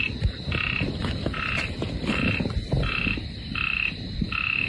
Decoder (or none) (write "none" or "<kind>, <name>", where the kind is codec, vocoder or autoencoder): none